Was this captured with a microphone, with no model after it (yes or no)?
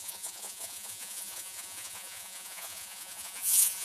no